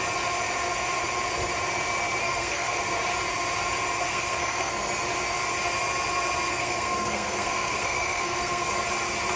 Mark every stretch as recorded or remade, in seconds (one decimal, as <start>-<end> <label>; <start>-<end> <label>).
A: 0.0-2.2 recorded; 2.2-2.8 remade; 2.8-4.1 recorded; 4.1-4.7 remade; 4.7-6.5 recorded; 6.5-8.7 remade; 8.7-9.4 recorded